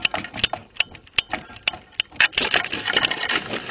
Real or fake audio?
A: real